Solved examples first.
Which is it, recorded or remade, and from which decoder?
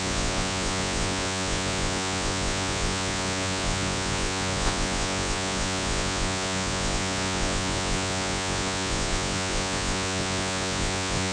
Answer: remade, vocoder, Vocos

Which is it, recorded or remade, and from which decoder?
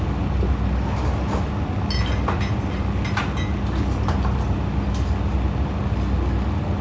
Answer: recorded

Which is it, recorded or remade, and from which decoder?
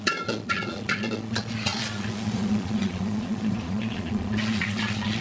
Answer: remade, vocoder, Vocos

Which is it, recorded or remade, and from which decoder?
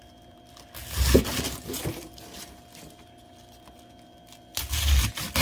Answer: recorded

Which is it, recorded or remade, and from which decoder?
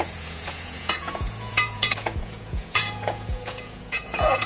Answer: remade, vocoder, Vocos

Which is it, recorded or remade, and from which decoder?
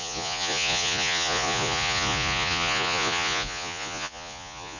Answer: remade, vocoder, Vocos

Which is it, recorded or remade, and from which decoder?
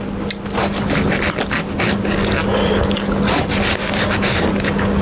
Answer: recorded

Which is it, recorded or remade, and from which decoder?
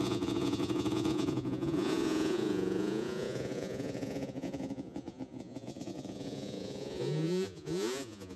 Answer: remade, vocoder, Vocos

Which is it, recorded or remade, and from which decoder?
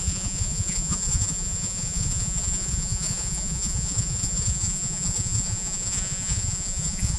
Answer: remade, vocoder, Vocos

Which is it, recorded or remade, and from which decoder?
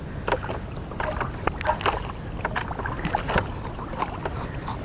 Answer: recorded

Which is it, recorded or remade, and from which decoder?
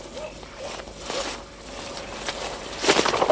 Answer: recorded